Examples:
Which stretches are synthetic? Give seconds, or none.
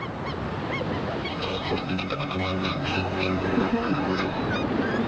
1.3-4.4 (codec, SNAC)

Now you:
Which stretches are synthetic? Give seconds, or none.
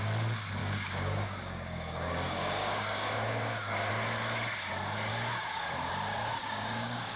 0.6-3.9 (codec, DAC); 5.1-5.9; 6.4-7.2